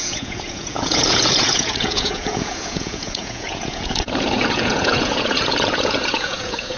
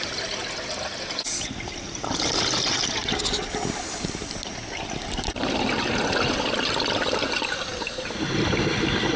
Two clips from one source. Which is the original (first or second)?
second